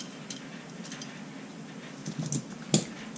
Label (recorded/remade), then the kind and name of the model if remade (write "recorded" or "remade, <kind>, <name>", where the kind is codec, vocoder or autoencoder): recorded